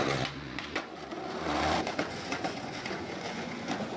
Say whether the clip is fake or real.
fake